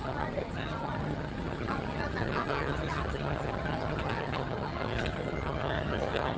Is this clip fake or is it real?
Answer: fake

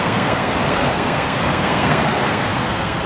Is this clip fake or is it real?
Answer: fake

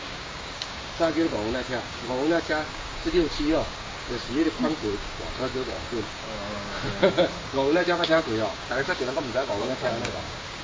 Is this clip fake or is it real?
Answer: fake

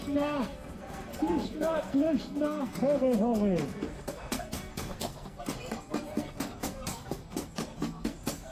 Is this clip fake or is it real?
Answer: fake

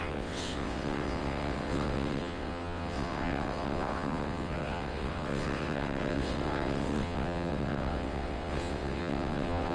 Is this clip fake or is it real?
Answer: fake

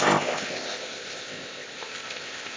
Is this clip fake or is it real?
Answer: fake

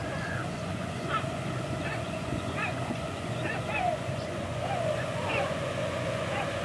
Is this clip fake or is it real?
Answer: fake